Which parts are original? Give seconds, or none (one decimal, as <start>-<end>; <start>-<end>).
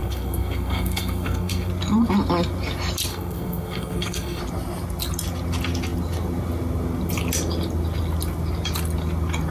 1.7-3.1; 4.4-9.5